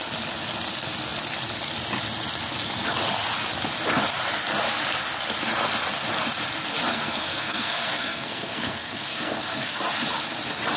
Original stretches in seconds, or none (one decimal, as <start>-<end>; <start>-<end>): 0.0-6.9; 9.8-10.8